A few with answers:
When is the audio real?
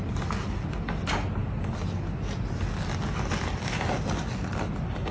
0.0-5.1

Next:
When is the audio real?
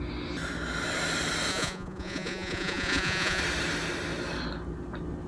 0.0-1.5; 3.4-5.3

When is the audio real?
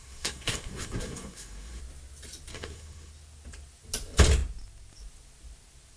1.8-2.5; 3.1-6.0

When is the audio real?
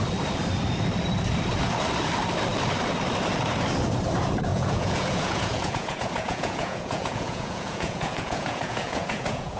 0.0-4.5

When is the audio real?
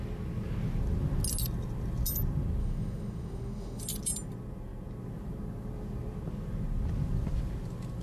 0.0-2.6; 3.8-8.0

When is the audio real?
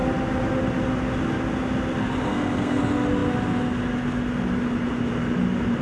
0.0-2.3; 2.8-5.8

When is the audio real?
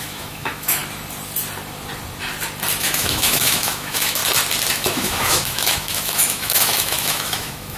0.8-2.8; 4.2-4.7